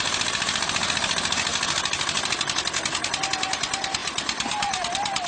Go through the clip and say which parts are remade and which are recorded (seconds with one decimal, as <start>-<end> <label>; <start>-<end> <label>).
0.0-4.0 recorded; 4.0-5.3 remade